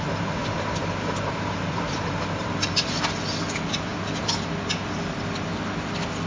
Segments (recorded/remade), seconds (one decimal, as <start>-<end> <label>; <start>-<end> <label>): 0.0-0.4 recorded; 0.4-3.0 remade; 3.0-6.3 recorded